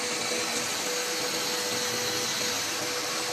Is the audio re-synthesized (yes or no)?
no